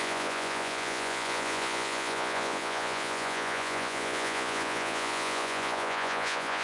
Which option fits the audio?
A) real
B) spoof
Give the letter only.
B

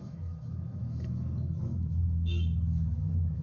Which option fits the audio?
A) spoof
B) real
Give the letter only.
A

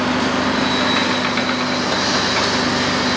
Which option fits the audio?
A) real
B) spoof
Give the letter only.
A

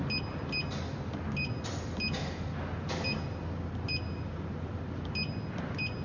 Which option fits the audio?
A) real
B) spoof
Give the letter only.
A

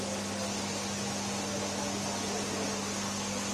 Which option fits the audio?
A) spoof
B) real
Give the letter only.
B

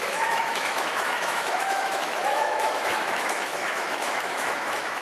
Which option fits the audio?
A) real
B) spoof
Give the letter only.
B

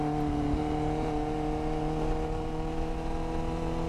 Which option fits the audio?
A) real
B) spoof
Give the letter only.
A